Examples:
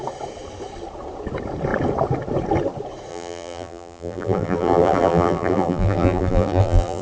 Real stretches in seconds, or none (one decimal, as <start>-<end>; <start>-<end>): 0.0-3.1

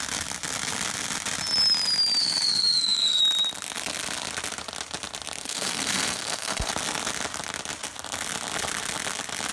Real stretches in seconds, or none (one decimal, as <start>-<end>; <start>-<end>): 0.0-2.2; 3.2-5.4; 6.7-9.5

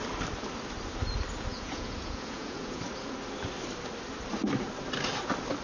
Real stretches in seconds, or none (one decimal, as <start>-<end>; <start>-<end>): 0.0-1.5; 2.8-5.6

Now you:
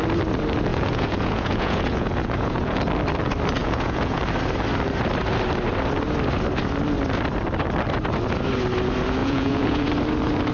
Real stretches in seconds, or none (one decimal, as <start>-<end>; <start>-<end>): 0.0-0.7; 2.8-3.6; 4.2-9.2; 9.9-10.5

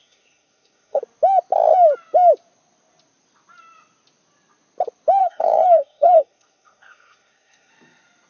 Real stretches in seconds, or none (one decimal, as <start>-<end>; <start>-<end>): 1.0-5.2; 7.7-8.3

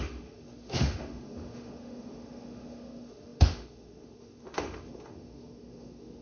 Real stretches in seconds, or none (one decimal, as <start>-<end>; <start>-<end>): none

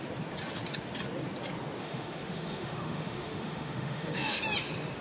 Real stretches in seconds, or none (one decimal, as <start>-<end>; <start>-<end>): 0.0-1.8; 4.4-5.0

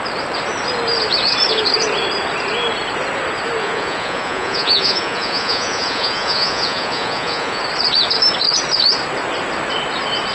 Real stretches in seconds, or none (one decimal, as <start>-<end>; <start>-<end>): 0.0-3.6; 7.6-10.3